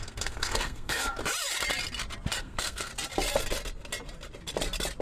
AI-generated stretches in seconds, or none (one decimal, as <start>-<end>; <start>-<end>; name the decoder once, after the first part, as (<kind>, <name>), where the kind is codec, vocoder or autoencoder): 0.0-1.2 (codec, SNAC); 2.4-2.9